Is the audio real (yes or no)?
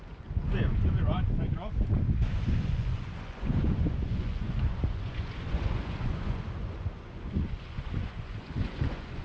no